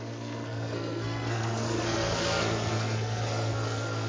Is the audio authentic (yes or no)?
no